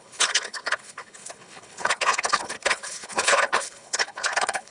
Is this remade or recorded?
remade